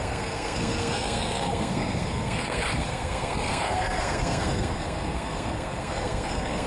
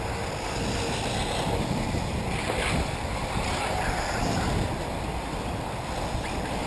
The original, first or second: second